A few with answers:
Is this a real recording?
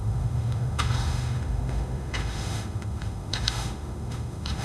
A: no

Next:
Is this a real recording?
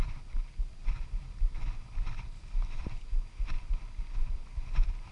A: yes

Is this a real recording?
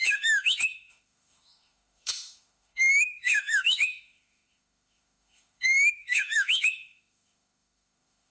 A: no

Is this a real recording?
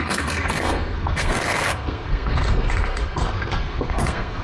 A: no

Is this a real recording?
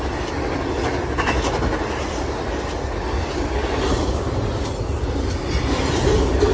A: yes